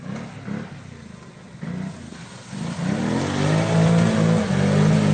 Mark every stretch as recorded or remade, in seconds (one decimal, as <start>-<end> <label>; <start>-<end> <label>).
0.0-5.1 recorded